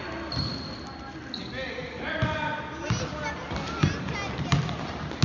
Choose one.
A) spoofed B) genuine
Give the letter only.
B